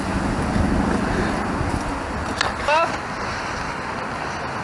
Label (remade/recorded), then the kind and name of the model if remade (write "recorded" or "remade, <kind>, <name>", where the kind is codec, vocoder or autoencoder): recorded